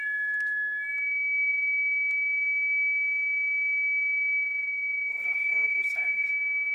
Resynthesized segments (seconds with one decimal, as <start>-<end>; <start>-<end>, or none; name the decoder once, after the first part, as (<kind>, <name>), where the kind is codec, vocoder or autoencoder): 5.1-6.3 (vocoder, Vocos)